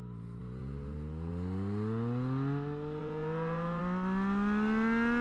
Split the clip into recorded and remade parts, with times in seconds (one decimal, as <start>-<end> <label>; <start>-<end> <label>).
0.0-0.4 recorded; 0.4-1.3 remade; 1.3-3.0 recorded; 3.0-3.8 remade; 3.8-5.2 recorded